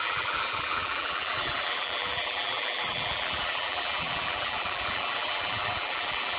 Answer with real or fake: fake